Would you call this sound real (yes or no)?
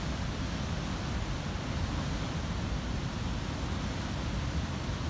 yes